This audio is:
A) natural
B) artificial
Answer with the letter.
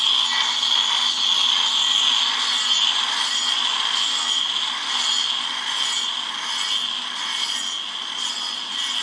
A